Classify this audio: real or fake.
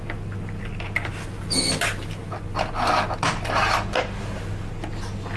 real